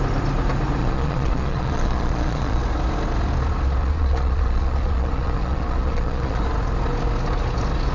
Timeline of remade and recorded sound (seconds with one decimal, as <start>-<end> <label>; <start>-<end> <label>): 0.0-0.8 recorded; 0.8-2.6 remade; 2.6-3.8 recorded; 3.8-6.4 remade; 6.4-7.9 recorded